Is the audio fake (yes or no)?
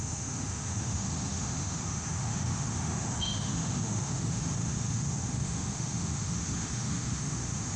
yes